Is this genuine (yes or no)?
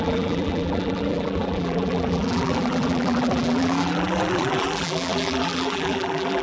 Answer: no